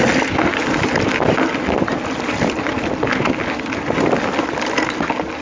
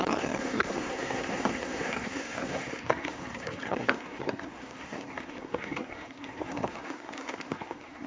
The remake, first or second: second